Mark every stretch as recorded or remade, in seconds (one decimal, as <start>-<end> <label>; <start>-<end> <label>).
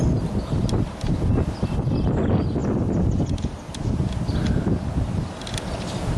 0.0-6.2 recorded